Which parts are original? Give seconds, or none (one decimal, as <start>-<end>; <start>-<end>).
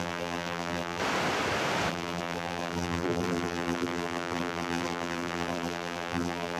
1.0-1.9